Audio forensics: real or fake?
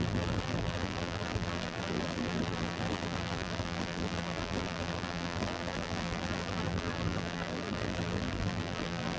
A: fake